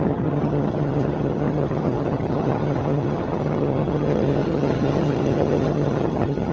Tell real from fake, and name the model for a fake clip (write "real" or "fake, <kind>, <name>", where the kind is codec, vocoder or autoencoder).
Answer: fake, vocoder, HiFi-GAN